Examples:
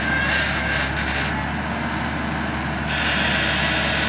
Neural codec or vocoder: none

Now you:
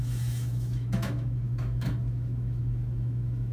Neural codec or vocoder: autoencoder, DAC-VAE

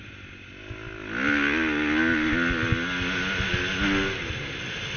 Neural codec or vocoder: none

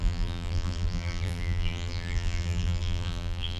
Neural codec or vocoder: vocoder, BigVGAN v2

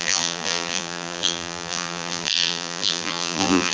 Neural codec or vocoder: vocoder, BigVGAN v2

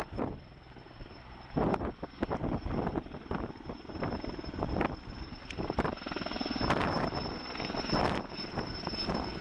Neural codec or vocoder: vocoder, BigVGAN v2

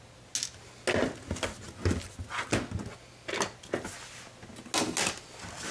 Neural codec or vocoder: none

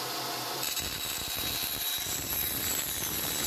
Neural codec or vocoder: vocoder, BigVGAN v2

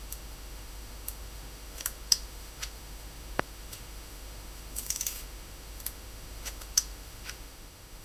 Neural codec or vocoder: autoencoder, DAC-VAE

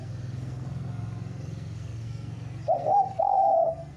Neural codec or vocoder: codec, SNAC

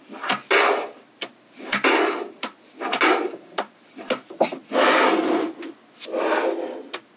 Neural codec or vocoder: none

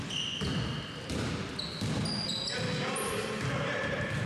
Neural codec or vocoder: vocoder, BigVGAN v2